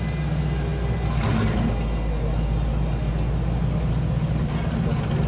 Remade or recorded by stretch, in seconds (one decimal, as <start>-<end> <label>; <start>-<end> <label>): 0.0-5.3 recorded